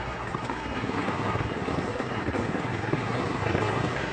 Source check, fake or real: fake